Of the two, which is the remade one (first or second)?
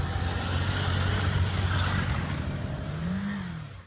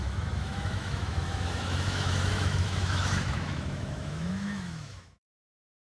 second